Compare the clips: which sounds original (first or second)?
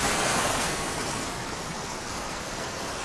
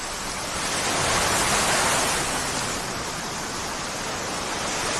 second